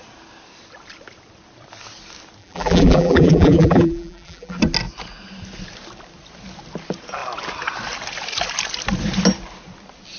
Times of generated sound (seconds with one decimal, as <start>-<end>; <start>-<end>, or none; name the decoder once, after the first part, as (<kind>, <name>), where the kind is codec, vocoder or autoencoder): 2.4-4.6 (vocoder, BigVGAN v2)